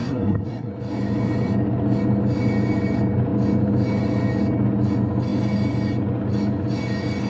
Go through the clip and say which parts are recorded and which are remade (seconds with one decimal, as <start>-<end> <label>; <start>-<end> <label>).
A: 0.0-0.7 remade; 0.7-7.3 recorded